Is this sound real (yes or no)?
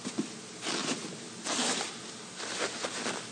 yes